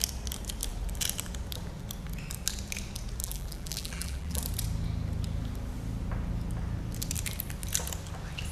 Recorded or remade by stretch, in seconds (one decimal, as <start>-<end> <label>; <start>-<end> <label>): 0.0-3.2 recorded; 3.2-4.4 remade; 4.4-8.5 recorded